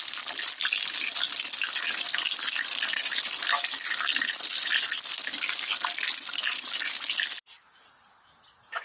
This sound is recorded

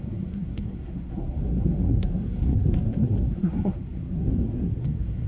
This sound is remade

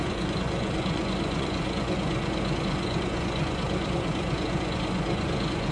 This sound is remade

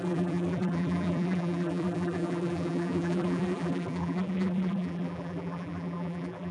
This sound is remade